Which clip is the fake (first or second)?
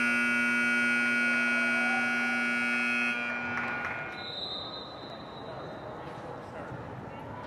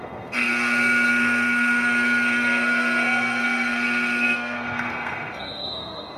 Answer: second